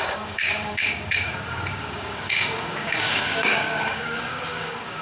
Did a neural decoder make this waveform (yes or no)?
yes